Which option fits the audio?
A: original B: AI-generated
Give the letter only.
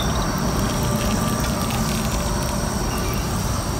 A